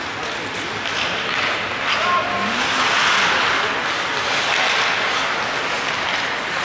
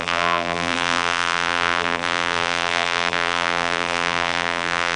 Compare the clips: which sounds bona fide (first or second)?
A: first